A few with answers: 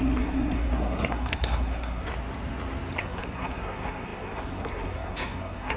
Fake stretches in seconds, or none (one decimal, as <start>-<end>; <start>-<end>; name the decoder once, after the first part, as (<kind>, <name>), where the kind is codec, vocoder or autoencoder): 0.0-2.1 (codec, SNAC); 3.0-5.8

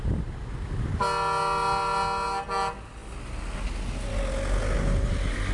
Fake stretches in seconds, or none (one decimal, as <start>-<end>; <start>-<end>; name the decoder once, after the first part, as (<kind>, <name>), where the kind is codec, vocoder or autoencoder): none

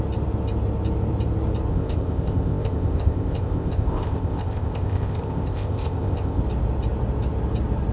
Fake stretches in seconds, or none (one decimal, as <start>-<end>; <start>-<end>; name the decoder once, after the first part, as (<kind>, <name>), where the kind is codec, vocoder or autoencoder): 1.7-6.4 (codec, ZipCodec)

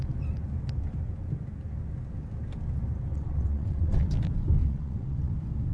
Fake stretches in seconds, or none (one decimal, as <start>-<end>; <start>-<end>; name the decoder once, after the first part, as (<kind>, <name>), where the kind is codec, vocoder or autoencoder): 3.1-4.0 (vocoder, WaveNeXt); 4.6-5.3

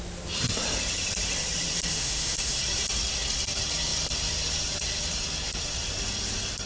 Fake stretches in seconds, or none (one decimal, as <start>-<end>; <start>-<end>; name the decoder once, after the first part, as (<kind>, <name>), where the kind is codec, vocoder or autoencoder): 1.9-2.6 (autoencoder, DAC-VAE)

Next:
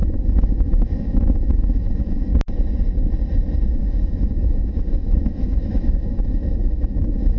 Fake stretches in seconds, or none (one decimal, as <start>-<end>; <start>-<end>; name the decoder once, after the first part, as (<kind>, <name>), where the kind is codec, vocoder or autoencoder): 0.0-2.3 (autoencoder, DAC-VAE); 3.7-7.4

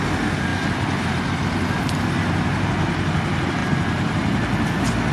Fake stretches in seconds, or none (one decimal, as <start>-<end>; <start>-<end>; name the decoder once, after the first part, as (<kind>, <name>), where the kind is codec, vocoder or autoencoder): none